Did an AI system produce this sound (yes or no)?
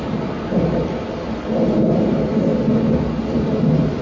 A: no